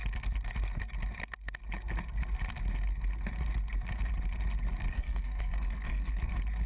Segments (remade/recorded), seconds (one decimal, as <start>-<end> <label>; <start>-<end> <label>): 0.0-4.9 recorded; 4.9-6.3 remade; 6.3-6.7 recorded

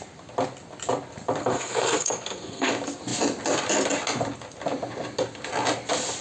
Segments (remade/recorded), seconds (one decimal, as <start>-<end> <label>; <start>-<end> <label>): 0.0-1.4 recorded; 1.4-2.7 remade; 2.7-6.2 recorded

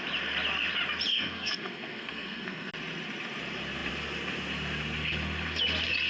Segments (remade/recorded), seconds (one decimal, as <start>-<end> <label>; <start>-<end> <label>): 0.0-1.1 recorded; 1.1-2.7 remade; 2.7-6.1 recorded